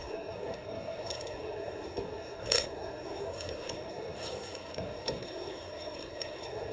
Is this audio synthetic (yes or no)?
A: yes